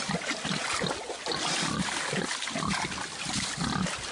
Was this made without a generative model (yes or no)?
yes